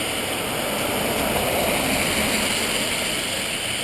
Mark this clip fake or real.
real